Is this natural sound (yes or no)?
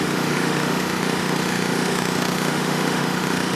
no